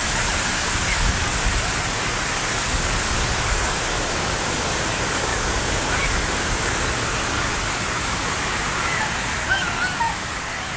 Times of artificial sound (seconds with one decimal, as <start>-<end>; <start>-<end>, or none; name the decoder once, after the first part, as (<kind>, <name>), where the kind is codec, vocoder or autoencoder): 0.0-10.8 (codec, DAC)